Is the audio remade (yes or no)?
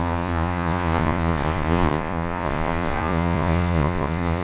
yes